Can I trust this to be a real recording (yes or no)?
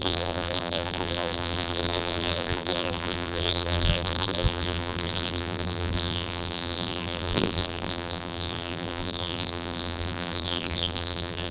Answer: no